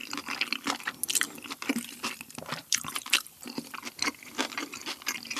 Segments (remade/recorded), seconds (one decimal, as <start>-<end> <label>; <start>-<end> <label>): 0.0-2.6 recorded; 2.6-3.2 remade; 3.2-5.4 recorded